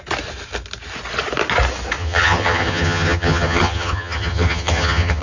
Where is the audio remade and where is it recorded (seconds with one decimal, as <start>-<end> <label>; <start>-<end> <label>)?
0.0-2.0 recorded; 2.0-5.2 remade